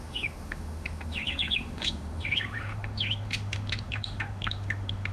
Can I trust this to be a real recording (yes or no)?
no